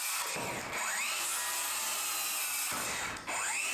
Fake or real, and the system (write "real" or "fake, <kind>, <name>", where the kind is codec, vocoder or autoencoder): real